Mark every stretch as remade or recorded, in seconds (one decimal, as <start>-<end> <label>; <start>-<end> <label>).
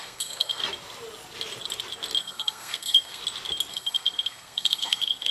0.0-0.6 remade; 0.6-2.2 recorded; 2.2-3.2 remade; 3.2-3.7 recorded; 3.7-5.3 remade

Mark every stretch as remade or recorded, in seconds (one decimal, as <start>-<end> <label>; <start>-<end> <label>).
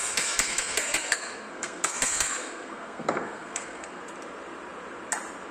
0.0-4.0 remade; 4.0-5.5 recorded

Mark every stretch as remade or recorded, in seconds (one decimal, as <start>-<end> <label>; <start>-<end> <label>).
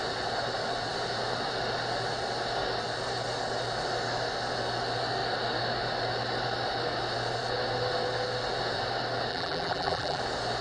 0.0-9.3 recorded; 9.3-10.2 remade; 10.2-10.6 recorded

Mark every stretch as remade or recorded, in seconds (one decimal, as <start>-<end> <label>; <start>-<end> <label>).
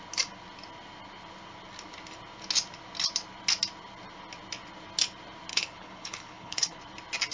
0.0-5.5 recorded; 5.5-6.8 remade; 6.8-7.3 recorded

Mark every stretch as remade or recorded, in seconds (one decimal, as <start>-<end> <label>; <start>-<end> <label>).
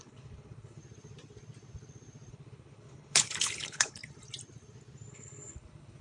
0.0-0.8 remade; 0.8-2.3 recorded; 2.3-4.0 remade; 4.0-5.1 recorded; 5.1-6.0 remade